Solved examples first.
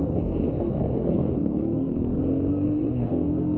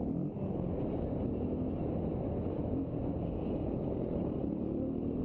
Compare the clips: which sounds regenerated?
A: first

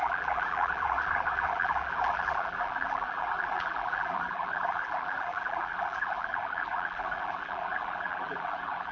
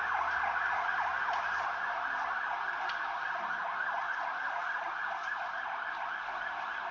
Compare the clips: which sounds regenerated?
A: first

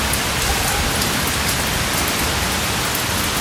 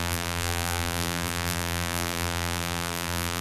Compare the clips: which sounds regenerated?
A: second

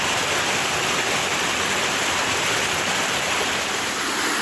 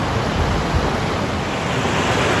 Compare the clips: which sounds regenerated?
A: first